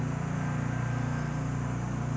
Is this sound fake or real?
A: real